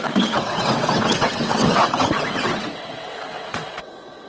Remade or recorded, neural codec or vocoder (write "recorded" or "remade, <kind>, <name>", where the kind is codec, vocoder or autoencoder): remade, vocoder, WaveNeXt